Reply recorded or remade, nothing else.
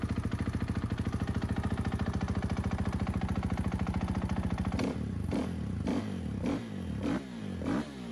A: recorded